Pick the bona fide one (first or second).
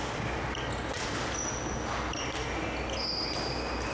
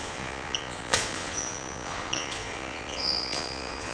first